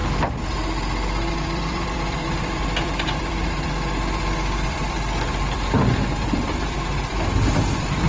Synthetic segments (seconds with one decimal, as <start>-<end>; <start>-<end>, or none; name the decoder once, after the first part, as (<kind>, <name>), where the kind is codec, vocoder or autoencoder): 1.3-8.1 (vocoder, BigVGAN v2)